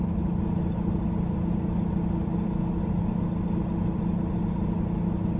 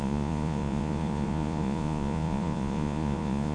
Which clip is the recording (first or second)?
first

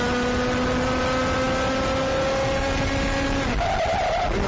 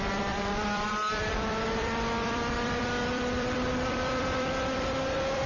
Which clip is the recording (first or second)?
first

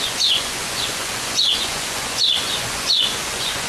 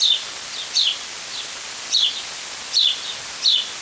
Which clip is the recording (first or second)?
second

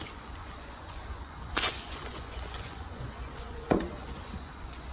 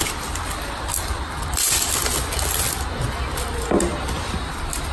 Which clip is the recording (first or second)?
second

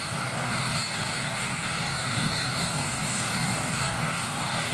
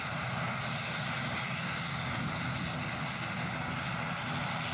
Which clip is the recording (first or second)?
second